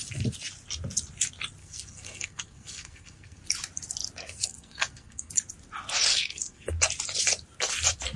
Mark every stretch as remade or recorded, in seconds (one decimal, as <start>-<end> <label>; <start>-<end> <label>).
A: 0.0-1.6 recorded; 1.6-3.4 remade; 3.4-4.2 recorded; 4.2-5.3 remade; 5.3-6.1 recorded; 6.1-6.7 remade; 6.7-8.2 recorded